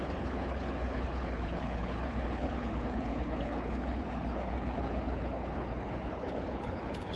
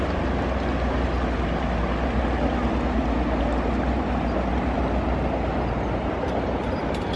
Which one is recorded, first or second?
second